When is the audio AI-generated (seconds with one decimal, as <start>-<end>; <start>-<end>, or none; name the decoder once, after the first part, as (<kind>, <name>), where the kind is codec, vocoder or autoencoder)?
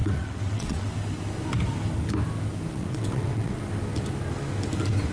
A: 0.0-0.9 (vocoder, WaveNeXt); 2.7-3.6